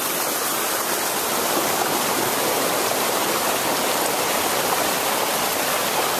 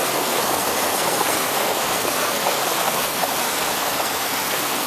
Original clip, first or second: first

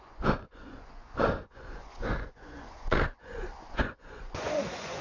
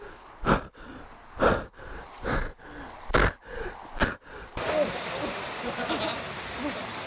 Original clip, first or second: second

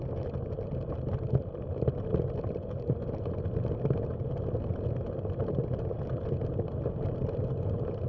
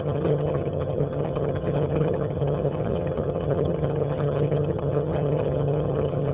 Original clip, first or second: first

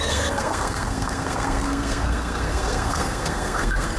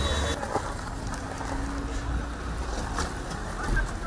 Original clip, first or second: second